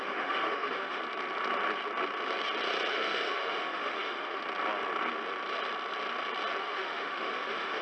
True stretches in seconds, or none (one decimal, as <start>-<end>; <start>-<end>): 1.0-2.9; 4.4-6.6